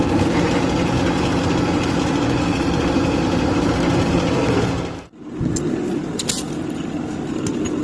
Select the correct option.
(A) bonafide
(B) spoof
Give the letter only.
A